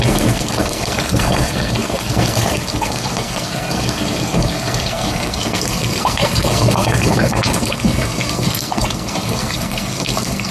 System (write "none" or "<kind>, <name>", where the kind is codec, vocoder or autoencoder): codec, SNAC